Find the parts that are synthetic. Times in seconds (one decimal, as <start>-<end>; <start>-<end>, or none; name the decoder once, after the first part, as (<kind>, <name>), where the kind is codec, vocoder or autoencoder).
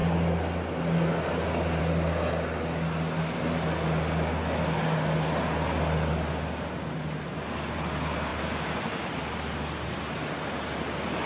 none